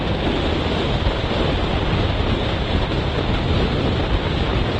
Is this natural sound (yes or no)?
yes